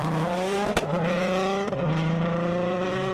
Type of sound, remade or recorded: remade